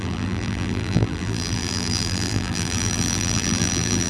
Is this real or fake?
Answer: fake